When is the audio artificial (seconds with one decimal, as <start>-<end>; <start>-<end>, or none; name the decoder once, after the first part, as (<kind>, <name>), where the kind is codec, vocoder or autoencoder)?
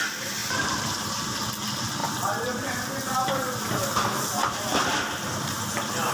0.4-1.1 (vocoder, BigVGAN v2); 2.0-6.1